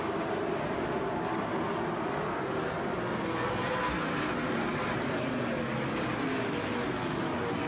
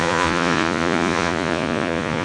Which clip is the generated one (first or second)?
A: second